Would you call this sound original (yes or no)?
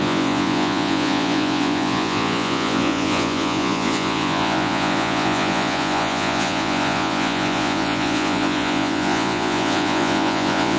no